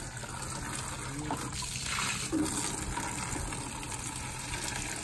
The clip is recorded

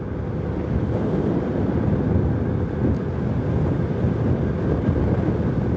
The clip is recorded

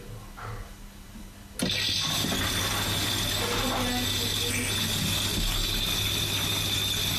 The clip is recorded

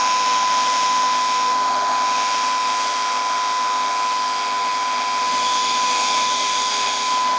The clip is remade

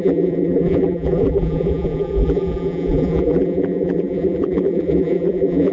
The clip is remade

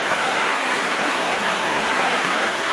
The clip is remade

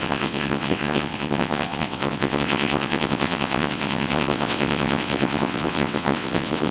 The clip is remade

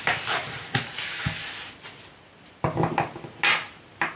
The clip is recorded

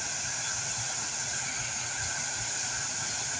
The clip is remade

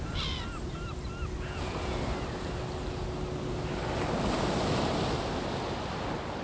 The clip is recorded